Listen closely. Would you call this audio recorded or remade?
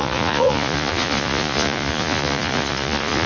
remade